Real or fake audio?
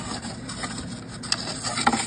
real